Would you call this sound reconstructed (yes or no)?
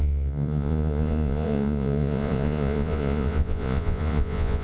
yes